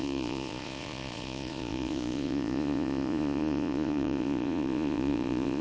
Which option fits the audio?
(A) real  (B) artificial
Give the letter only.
B